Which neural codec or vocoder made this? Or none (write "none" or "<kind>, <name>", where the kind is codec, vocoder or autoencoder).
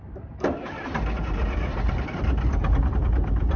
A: vocoder, BigVGAN v2